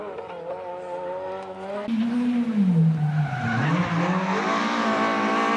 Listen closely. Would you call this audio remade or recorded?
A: recorded